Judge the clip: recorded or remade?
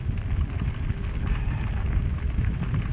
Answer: recorded